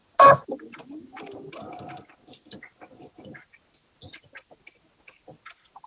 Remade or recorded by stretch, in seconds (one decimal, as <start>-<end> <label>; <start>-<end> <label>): 0.0-5.9 recorded